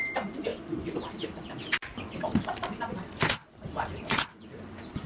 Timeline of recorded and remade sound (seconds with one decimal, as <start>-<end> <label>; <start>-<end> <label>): 0.0-5.1 recorded